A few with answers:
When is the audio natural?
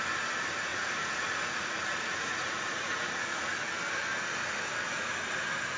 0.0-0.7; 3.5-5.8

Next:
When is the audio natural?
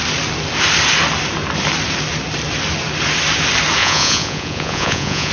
0.0-3.8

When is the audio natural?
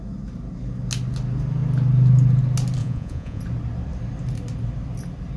0.0-2.8; 3.4-5.4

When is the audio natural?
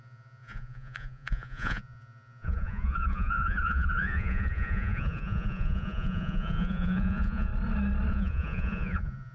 7.5-8.1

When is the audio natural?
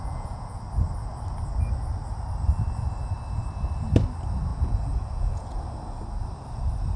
0.6-4.5; 5.6-7.0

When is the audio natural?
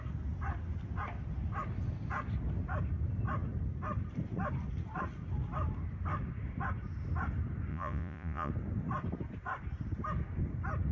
0.0-7.7; 8.5-10.9